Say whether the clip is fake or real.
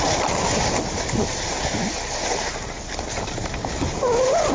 real